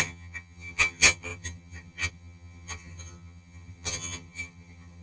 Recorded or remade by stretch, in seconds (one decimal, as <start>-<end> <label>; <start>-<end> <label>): 0.0-5.0 remade